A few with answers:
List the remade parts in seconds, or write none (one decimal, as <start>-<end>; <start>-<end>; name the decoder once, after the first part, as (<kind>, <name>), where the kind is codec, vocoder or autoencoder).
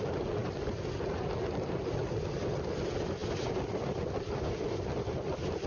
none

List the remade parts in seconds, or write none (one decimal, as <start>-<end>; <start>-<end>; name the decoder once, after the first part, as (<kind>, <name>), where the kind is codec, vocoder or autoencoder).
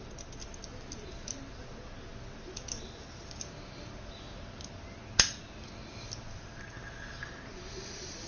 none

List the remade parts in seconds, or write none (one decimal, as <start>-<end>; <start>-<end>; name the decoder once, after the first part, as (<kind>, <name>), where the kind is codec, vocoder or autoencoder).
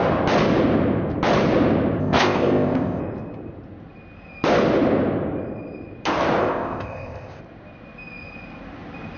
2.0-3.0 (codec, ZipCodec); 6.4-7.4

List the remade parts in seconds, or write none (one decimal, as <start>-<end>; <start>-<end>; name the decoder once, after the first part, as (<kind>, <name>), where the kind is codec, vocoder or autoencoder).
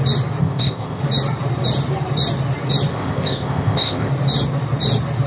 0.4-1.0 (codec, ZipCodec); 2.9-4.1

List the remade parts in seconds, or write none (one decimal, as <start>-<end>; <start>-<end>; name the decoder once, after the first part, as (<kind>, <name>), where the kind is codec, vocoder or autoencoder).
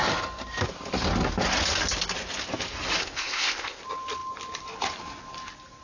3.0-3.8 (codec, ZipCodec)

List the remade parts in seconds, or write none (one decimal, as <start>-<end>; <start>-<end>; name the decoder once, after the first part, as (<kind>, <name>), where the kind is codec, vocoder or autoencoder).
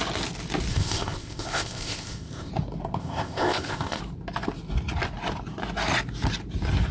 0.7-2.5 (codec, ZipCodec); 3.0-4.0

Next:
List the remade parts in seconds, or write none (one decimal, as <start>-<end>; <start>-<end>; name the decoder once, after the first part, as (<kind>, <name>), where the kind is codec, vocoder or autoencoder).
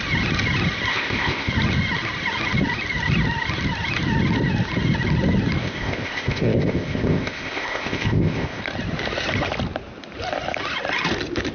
0.9-1.5 (codec, ZipCodec); 5.6-8.6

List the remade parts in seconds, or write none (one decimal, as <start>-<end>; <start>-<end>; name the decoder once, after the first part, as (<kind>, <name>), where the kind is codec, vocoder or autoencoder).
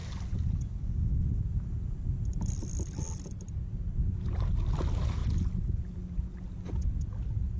none